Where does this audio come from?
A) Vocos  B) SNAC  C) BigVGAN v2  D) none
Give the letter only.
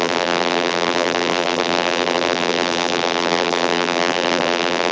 C